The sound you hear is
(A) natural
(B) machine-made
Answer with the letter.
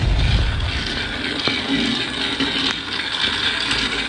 A